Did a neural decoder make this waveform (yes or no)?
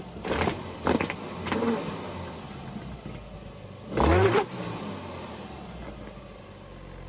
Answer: no